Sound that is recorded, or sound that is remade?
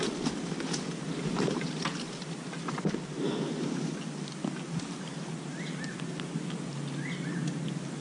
recorded